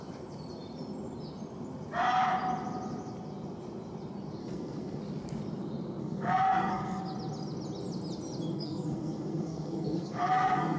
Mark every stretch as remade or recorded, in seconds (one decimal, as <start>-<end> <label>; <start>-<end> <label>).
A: 0.0-4.4 recorded; 4.4-5.0 remade; 5.0-6.0 recorded; 6.0-7.0 remade; 7.0-8.5 recorded; 8.5-10.8 remade